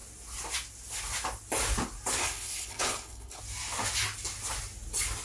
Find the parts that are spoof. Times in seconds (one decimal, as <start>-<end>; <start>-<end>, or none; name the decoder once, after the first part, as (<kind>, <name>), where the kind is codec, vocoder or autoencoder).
2.2-3.4 (codec, HILCodec)